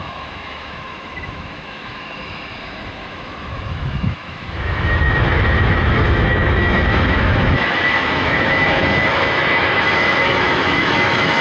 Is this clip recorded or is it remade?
remade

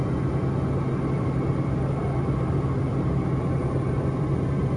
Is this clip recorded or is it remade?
remade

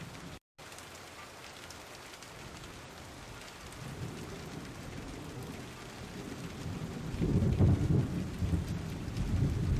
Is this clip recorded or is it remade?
recorded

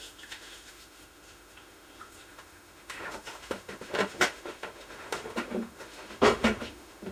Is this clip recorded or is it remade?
remade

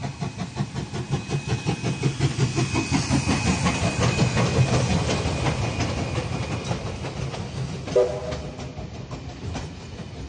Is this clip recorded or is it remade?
recorded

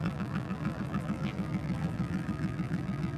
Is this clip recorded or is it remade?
remade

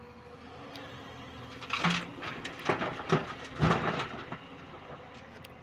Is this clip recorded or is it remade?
recorded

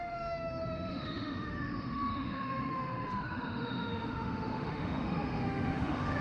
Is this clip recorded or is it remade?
remade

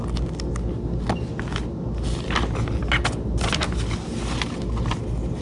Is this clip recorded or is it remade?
recorded